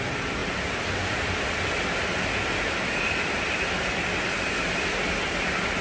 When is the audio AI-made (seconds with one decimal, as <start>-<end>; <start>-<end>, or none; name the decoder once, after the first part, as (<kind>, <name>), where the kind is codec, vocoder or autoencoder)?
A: none